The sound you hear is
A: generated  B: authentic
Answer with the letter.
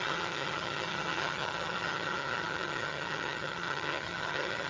A